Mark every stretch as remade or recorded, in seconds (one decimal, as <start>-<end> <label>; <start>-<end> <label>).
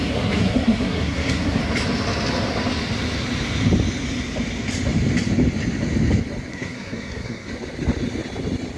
0.0-1.6 remade; 1.6-6.5 recorded; 6.5-7.5 remade; 7.5-8.8 recorded